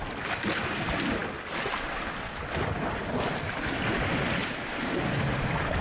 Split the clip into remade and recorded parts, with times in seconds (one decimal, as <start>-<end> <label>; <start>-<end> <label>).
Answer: 0.0-4.4 recorded; 4.4-5.0 remade; 5.0-5.8 recorded